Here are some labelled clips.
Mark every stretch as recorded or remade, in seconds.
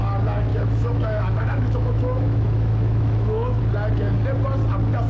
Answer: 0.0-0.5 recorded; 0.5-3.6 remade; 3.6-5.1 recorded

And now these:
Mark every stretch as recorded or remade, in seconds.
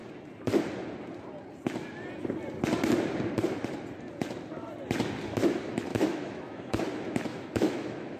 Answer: 0.0-5.9 recorded; 5.9-6.8 remade; 6.8-7.3 recorded; 7.3-8.2 remade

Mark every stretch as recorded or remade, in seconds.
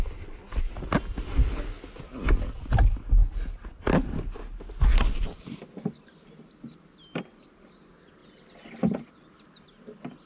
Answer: 0.0-10.3 recorded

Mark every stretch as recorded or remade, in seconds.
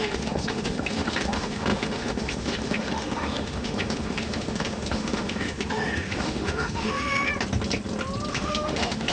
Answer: 0.0-7.3 remade; 7.3-8.3 recorded; 8.3-9.1 remade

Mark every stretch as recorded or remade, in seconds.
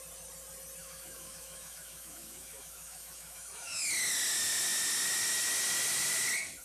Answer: 0.0-0.8 recorded; 0.8-3.7 remade; 3.7-6.6 recorded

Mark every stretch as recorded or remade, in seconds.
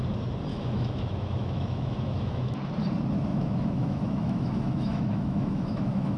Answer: 0.0-0.5 recorded; 0.5-2.6 remade; 2.6-3.3 recorded; 3.3-6.2 remade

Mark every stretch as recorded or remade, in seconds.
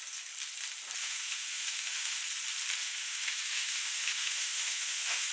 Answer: 0.0-1.0 recorded; 1.0-2.2 remade; 2.2-2.8 recorded; 2.8-5.3 remade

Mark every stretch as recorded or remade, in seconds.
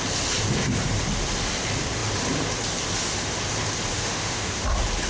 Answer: 0.0-3.9 recorded; 3.9-4.6 remade; 4.6-5.1 recorded